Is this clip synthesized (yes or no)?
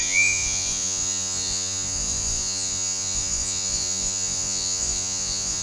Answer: yes